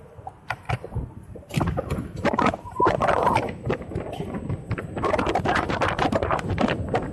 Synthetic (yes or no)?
yes